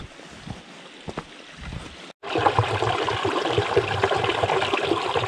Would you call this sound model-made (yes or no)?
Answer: no